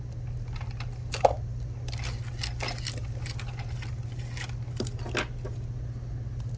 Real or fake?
real